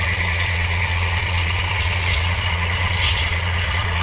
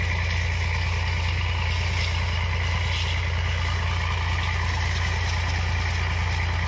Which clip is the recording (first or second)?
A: second